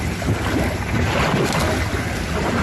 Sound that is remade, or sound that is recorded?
recorded